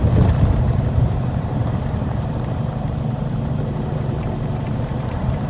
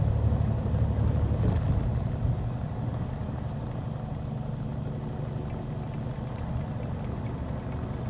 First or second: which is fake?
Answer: first